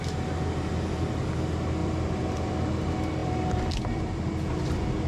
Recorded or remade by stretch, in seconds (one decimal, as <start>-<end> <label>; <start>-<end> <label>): 0.0-1.8 recorded; 1.8-2.5 remade; 2.5-3.2 recorded; 3.2-5.1 remade